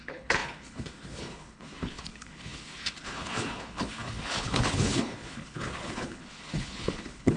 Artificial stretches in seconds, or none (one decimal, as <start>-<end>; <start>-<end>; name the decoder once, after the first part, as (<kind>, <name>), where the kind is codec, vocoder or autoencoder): 0.0-7.4 (codec, HILCodec)